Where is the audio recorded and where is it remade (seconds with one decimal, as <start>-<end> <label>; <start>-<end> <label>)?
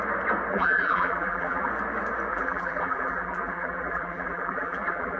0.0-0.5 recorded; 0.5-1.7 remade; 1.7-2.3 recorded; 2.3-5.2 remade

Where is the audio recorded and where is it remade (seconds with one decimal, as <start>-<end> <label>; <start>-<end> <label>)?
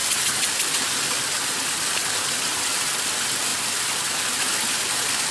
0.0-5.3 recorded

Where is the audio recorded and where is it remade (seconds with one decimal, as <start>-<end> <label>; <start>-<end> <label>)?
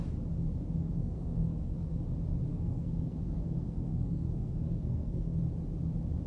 0.0-0.8 recorded; 0.8-2.0 remade; 2.0-2.5 recorded; 2.5-5.4 remade; 5.4-6.3 recorded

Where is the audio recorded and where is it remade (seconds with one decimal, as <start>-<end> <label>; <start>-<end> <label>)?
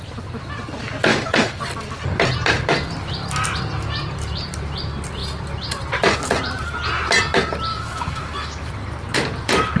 0.0-1.1 recorded; 1.1-1.6 remade; 1.6-7.7 recorded; 7.7-8.7 remade; 8.7-9.8 recorded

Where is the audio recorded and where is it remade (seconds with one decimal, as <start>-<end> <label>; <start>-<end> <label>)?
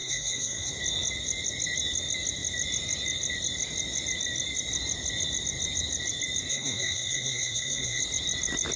0.0-0.7 remade; 0.7-6.5 recorded; 6.5-8.0 remade; 8.0-8.8 recorded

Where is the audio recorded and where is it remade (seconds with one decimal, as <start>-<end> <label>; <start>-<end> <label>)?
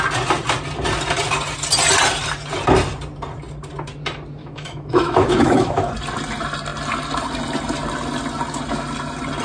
0.0-4.4 recorded; 4.4-5.9 remade; 5.9-9.4 recorded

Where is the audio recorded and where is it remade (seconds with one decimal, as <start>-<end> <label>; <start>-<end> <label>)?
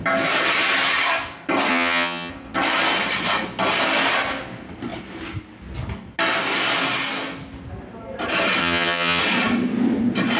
0.0-1.7 recorded; 1.7-2.3 remade; 2.3-8.6 recorded; 8.6-9.2 remade; 9.2-10.4 recorded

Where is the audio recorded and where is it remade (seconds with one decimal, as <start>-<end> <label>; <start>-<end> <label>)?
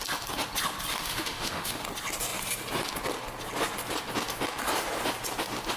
0.0-0.9 recorded; 0.9-1.8 remade; 1.8-5.8 recorded